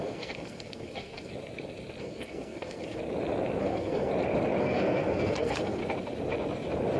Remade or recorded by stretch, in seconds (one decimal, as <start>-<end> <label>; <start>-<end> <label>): 0.0-1.3 remade; 1.3-2.0 recorded; 2.0-3.0 remade; 3.0-3.6 recorded; 3.6-4.1 remade; 4.1-4.6 recorded; 4.6-5.8 remade; 5.8-7.0 recorded